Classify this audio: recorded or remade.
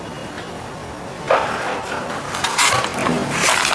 recorded